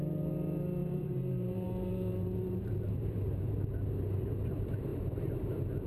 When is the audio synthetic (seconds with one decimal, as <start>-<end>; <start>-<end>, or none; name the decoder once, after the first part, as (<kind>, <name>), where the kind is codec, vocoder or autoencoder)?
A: 0.8-4.3 (vocoder, BigVGAN v2); 4.9-5.5